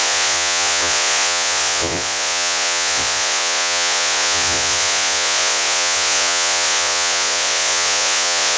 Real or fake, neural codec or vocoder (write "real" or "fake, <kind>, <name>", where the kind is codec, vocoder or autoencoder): fake, vocoder, Vocos